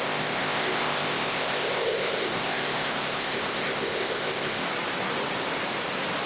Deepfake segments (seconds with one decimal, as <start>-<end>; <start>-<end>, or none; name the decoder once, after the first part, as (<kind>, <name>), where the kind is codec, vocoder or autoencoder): 0.0-4.6 (codec, ZipCodec)